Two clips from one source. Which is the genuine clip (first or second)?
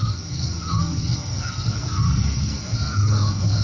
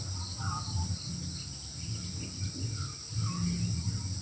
second